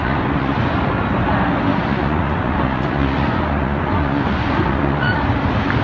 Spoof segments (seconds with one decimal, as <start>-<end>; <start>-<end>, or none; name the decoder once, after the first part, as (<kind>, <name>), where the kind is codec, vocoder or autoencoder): 0.0-0.6 (vocoder, Vocos); 1.7-5.2